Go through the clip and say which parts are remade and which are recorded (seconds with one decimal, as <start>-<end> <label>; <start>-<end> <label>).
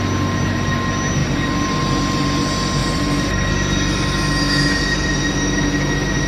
0.0-1.2 recorded; 1.2-1.8 remade; 1.8-2.8 recorded; 2.8-3.5 remade; 3.5-6.3 recorded